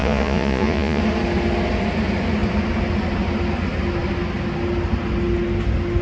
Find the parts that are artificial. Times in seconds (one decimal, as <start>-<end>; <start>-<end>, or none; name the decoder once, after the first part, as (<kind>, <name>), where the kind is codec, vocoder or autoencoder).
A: 0.0-1.0 (vocoder, Vocos)